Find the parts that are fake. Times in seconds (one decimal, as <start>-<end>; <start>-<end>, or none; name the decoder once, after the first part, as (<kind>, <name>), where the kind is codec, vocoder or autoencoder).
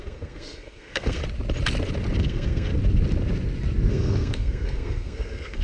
0.0-1.2 (codec, SNAC); 2.2-2.7; 3.9-5.6